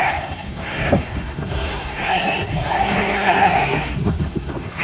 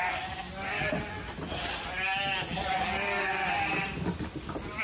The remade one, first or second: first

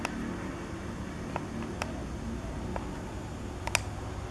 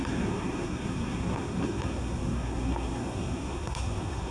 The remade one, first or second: second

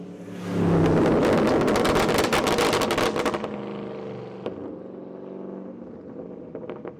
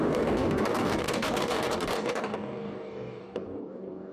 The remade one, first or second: second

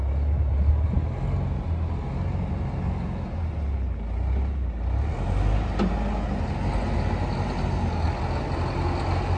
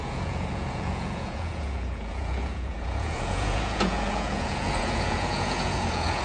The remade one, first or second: second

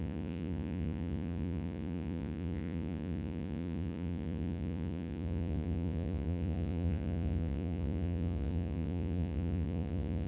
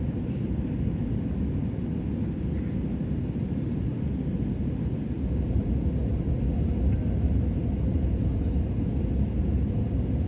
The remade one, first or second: first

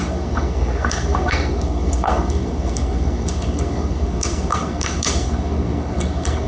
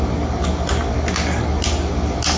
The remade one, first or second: first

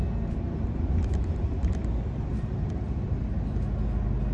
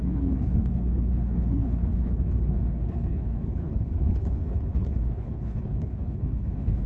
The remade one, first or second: second